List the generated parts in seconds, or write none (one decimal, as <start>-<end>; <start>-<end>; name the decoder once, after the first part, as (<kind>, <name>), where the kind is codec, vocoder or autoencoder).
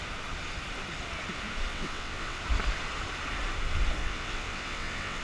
1.7-2.4 (vocoder, WaveNeXt); 4.0-5.2